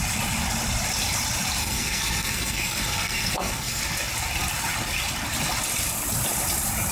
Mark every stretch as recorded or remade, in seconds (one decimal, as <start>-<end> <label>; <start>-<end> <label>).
0.0-1.6 recorded; 1.6-3.8 remade; 3.8-6.9 recorded